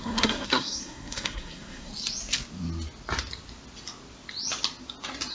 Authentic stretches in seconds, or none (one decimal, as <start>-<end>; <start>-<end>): 1.9-5.3